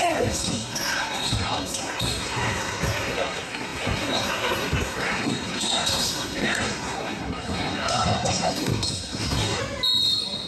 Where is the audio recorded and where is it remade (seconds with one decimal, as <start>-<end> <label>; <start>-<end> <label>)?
0.0-9.6 remade; 9.6-10.5 recorded